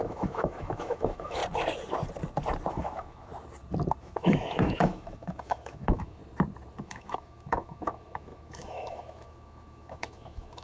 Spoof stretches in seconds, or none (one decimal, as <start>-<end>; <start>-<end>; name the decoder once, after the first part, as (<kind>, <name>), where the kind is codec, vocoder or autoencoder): 0.0-1.4 (autoencoder, DAC-VAE); 2.7-3.3; 4.0-6.2; 6.8-10.6